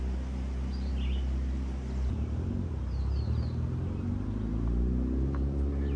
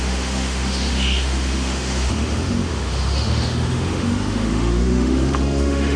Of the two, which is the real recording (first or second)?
first